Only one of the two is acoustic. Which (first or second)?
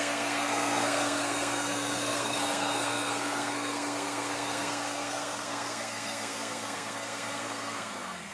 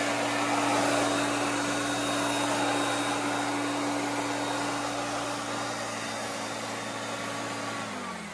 second